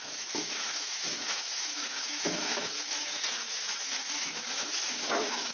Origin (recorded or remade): remade